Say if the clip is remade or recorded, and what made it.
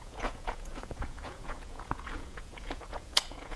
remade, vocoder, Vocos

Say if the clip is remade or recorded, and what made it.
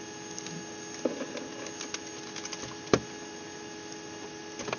recorded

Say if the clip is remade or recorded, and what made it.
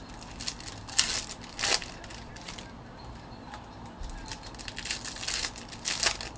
recorded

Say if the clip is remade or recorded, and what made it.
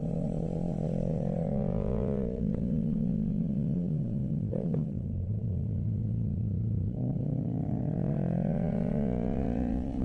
remade, vocoder, Vocos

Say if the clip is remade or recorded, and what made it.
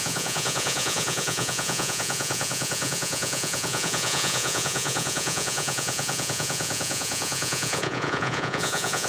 remade, vocoder, Vocos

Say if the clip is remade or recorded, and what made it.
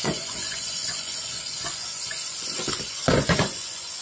remade, vocoder, Vocos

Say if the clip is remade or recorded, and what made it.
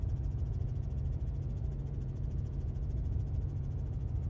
remade, vocoder, Vocos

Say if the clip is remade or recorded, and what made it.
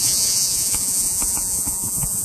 remade, vocoder, Vocos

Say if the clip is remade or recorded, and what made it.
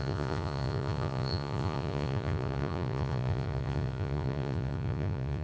remade, vocoder, Vocos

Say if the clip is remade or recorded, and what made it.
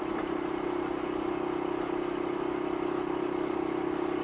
recorded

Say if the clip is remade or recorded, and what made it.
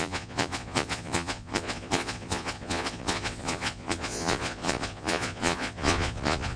remade, vocoder, Vocos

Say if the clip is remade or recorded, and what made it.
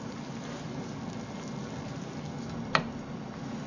recorded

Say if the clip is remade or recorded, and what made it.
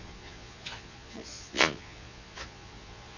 remade, vocoder, Vocos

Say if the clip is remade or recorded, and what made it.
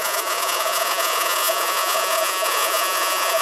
remade, vocoder, Vocos